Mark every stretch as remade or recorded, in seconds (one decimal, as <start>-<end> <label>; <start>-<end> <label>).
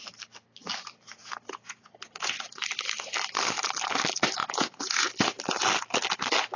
0.0-1.2 recorded; 1.2-2.4 remade; 2.4-4.4 recorded; 4.4-5.1 remade; 5.1-6.6 recorded